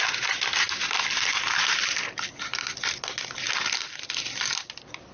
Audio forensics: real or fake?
real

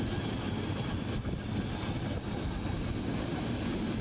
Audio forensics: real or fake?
real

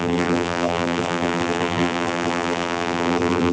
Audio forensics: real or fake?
fake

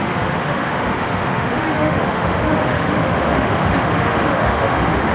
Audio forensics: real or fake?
fake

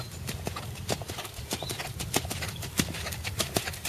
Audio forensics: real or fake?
real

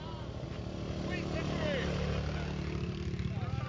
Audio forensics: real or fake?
real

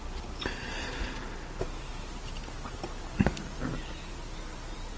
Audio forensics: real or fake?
real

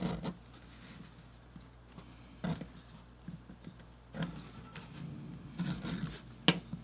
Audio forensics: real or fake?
real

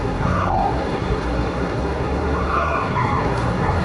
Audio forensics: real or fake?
fake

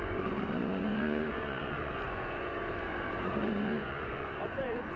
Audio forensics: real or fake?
fake